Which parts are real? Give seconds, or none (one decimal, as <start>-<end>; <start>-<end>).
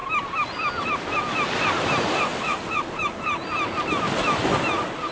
0.0-5.1